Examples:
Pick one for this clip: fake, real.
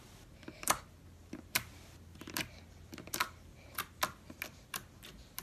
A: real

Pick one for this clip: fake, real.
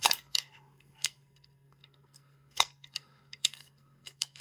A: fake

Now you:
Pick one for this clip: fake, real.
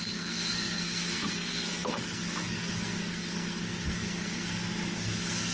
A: fake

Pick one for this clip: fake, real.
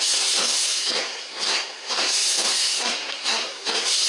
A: fake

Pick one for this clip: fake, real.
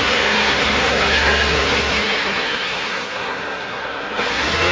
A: fake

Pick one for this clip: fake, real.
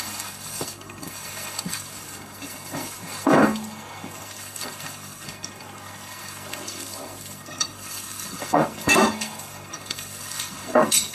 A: fake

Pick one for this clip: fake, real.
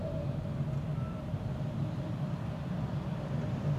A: real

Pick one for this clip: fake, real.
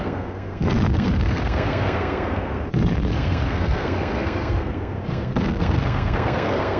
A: fake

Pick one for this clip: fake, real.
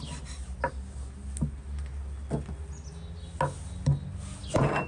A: real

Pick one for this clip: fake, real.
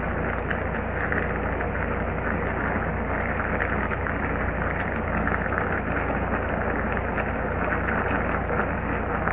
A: real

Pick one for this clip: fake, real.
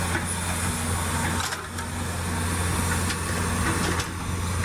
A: real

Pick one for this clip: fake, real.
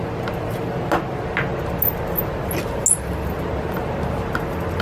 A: real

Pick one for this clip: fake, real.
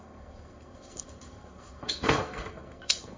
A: fake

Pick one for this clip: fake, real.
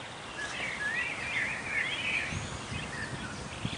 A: real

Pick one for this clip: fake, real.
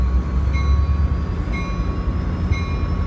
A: real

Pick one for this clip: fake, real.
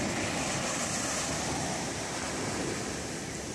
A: real